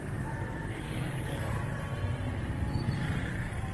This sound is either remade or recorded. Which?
recorded